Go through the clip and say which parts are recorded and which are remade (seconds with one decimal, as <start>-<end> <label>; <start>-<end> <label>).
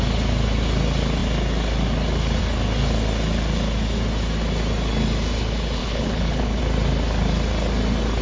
0.0-5.8 recorded; 5.8-6.6 remade; 6.6-8.2 recorded